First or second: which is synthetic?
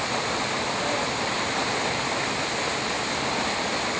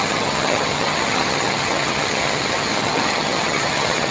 second